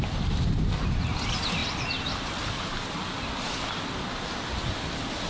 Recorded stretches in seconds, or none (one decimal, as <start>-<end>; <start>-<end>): 0.0-5.3